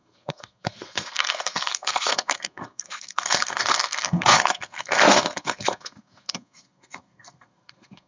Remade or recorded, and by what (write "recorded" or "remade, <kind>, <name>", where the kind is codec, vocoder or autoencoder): remade, codec, SNAC